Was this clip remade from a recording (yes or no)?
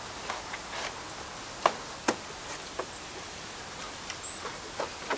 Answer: no